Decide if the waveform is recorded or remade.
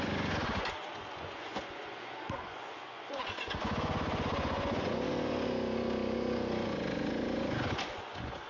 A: remade